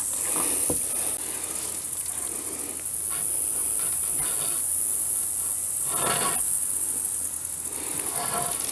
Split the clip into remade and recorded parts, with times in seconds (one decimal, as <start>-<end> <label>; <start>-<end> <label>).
0.0-8.7 recorded

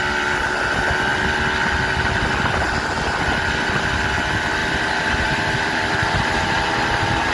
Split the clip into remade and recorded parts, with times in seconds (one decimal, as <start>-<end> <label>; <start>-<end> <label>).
0.0-4.6 recorded; 4.6-7.3 remade

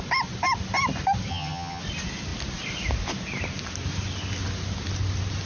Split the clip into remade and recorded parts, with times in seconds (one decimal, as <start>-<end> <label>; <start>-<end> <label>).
0.0-1.3 recorded; 1.3-1.8 remade; 1.8-5.5 recorded